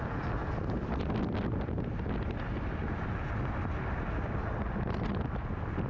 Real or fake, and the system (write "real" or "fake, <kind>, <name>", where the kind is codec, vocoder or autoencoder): real